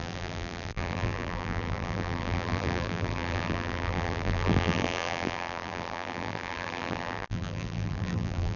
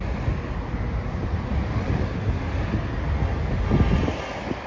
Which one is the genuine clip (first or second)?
second